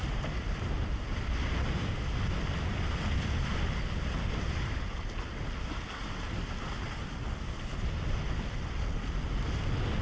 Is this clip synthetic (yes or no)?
no